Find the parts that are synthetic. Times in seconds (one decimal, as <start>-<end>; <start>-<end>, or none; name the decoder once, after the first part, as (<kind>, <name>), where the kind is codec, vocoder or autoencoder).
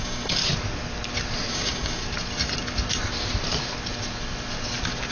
0.0-0.4 (codec, DAC); 1.5-2.0